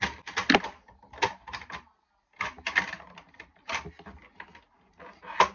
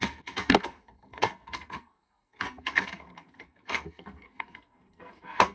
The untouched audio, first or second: first